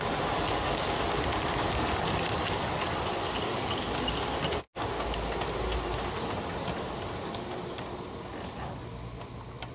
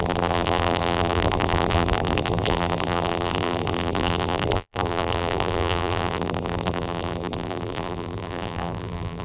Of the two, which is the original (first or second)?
first